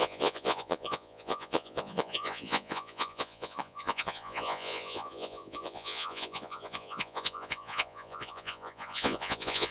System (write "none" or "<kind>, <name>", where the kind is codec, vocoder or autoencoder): vocoder, Vocos